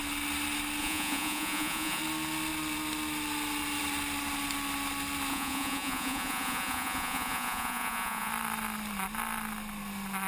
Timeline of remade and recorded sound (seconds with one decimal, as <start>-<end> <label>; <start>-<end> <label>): 0.0-0.8 recorded; 0.8-2.0 remade; 2.0-5.3 recorded; 5.3-8.3 remade; 8.3-10.3 recorded